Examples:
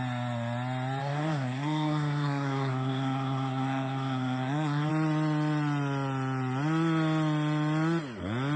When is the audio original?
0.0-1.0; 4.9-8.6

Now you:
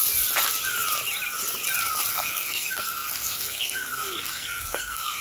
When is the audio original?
0.0-2.1

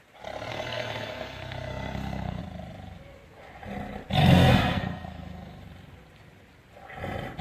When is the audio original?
0.0-0.5; 2.4-4.2; 5.6-7.4

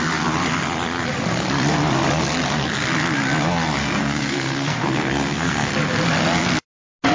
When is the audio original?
0.0-3.8; 5.7-7.1

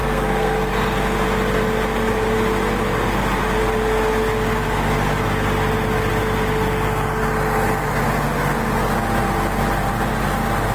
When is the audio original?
0.7-10.7